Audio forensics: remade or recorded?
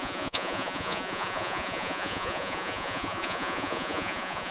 remade